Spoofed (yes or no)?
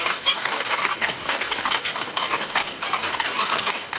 yes